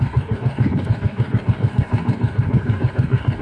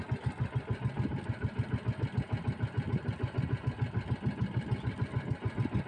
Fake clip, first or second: first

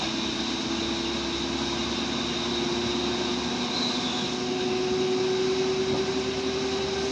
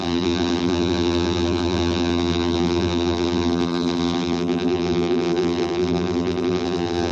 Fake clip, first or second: second